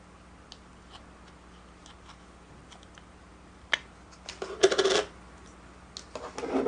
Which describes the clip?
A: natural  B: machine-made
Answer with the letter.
A